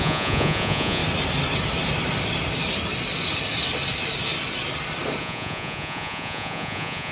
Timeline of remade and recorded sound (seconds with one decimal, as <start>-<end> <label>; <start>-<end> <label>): 0.0-1.0 remade; 1.0-5.2 recorded; 5.2-7.1 remade

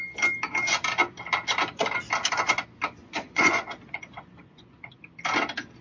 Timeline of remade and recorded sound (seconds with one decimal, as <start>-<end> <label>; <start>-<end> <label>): 0.0-3.0 recorded; 3.0-4.9 remade; 4.9-5.8 recorded

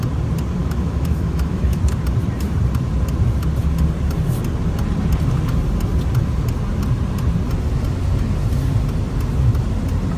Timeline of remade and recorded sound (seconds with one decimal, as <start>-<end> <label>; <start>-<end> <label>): 0.0-0.6 recorded; 0.6-1.8 remade; 1.8-10.2 recorded

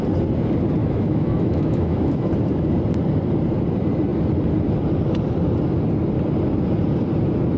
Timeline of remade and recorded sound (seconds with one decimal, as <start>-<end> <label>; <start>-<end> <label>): 0.0-0.8 recorded; 0.8-2.3 remade; 2.3-7.6 recorded